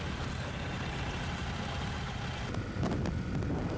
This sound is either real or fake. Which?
real